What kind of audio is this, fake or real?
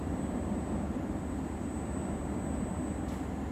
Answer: real